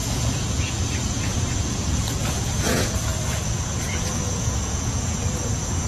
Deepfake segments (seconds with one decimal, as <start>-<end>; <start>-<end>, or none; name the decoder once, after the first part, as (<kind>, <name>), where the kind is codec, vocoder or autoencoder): 0.0-5.9 (vocoder, Vocos)